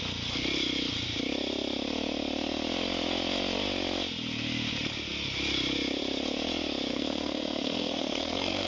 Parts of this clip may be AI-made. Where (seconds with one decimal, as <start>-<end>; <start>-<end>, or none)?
6.9-8.7